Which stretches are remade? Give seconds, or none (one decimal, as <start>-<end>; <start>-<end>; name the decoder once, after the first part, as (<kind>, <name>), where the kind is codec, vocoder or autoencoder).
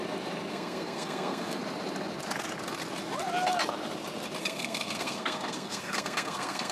0.5-1.6 (codec, SNAC); 4.4-6.7